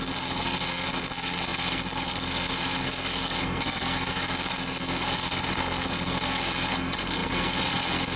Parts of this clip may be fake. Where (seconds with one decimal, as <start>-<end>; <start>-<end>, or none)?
0.0-8.2